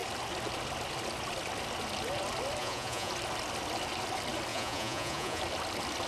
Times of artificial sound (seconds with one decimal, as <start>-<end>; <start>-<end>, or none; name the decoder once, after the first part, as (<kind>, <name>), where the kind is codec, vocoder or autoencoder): 2.6-3.1 (vocoder, Vocos); 4.5-5.4